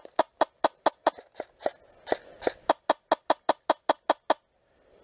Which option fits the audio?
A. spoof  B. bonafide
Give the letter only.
B